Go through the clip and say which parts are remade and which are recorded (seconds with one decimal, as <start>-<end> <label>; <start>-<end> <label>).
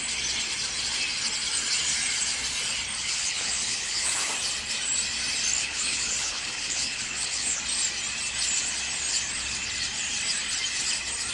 0.0-3.0 recorded; 3.0-4.3 remade; 4.3-5.6 recorded; 5.6-7.6 remade; 7.6-11.3 recorded